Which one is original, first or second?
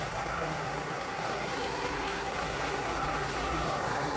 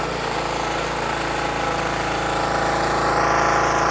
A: second